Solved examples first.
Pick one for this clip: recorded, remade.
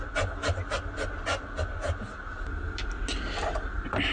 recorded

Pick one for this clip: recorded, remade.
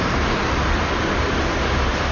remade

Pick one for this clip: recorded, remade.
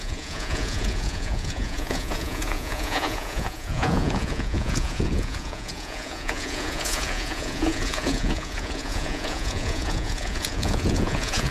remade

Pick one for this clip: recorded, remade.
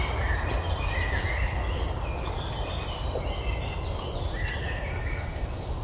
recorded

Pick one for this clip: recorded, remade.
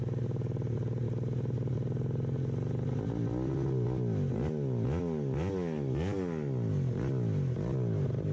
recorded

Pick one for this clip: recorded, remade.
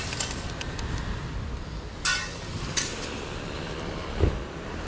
recorded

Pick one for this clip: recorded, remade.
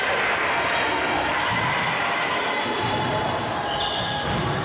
recorded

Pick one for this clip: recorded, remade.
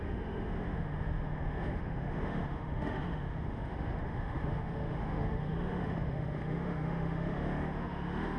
remade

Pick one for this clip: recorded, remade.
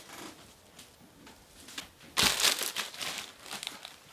recorded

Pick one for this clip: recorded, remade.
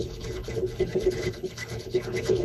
remade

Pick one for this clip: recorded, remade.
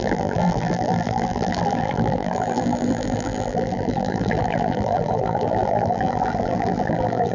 remade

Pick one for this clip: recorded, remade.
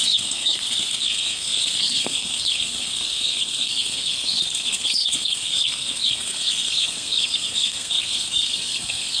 remade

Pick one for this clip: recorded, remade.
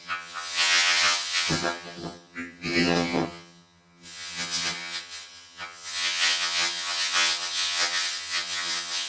remade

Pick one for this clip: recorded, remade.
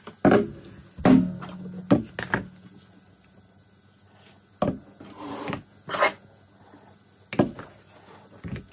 recorded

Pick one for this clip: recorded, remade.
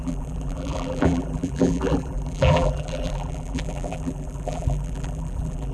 remade